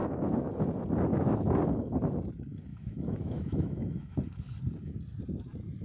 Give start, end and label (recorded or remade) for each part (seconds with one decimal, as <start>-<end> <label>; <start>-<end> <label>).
0.0-0.5 remade; 0.5-1.1 recorded; 1.1-1.6 remade; 1.6-2.7 recorded; 2.7-4.2 remade; 4.2-5.8 recorded